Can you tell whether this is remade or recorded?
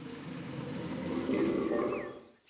recorded